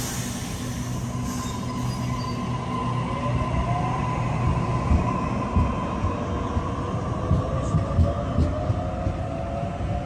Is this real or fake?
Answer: real